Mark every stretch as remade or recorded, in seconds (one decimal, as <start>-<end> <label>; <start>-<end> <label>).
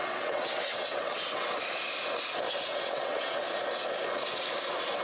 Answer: 0.0-1.5 remade; 1.5-2.7 recorded; 2.7-3.4 remade; 3.4-5.0 recorded